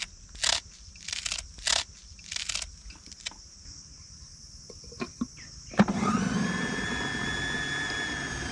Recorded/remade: recorded